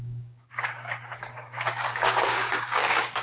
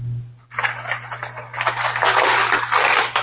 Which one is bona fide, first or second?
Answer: second